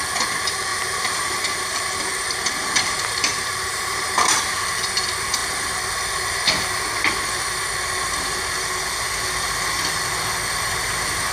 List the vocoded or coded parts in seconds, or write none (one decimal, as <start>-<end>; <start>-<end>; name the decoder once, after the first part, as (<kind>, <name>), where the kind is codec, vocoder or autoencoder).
0.7-4.4 (vocoder, BigVGAN v2)